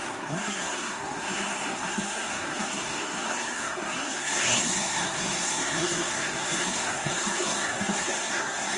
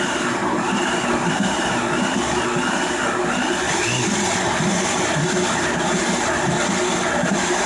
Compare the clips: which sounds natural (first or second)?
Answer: second